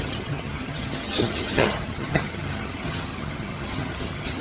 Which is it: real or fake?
fake